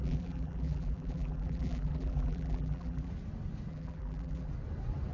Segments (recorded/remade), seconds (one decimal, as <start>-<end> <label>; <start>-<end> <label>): 0.0-3.1 remade; 3.1-3.7 recorded; 3.7-4.5 remade; 4.5-5.1 recorded